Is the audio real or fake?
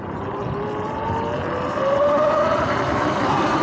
real